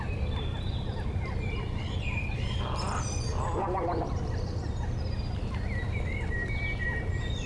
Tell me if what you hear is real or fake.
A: fake